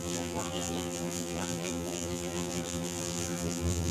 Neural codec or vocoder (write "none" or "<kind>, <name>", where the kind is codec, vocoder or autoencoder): vocoder, BigVGAN v2